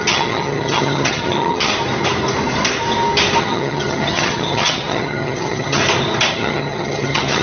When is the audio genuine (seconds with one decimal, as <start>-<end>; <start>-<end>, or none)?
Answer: 1.7-3.4; 5.8-6.3